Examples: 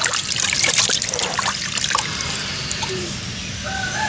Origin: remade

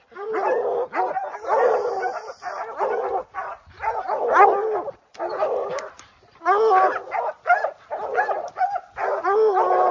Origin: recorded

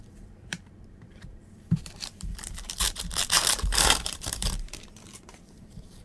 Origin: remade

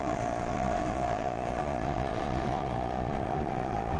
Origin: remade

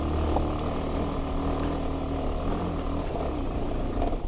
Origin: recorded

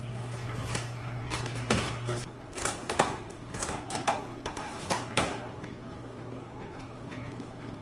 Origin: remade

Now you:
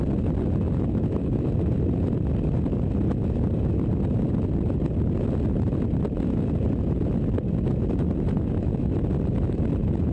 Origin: recorded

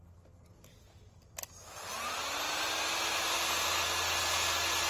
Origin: recorded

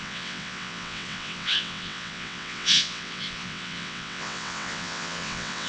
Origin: remade